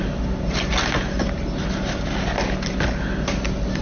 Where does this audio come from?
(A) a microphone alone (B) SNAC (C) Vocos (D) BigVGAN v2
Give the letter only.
A